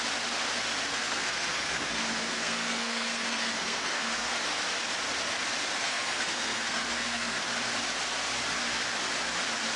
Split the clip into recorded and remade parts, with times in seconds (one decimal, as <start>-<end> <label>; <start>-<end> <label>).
0.0-0.9 recorded; 0.9-4.3 remade; 4.3-5.8 recorded; 5.8-7.4 remade; 7.4-9.8 recorded